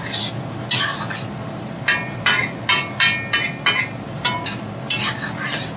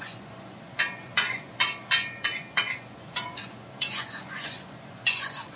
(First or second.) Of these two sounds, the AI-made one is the second